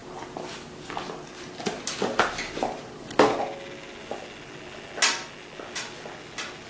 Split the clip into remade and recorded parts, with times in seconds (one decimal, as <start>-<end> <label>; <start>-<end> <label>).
0.0-6.7 recorded